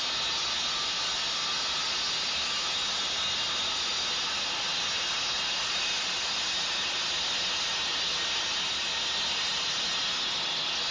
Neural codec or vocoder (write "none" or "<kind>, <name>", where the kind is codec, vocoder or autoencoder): none